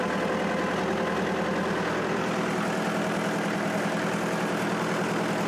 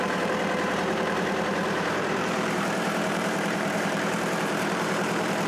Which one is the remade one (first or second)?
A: second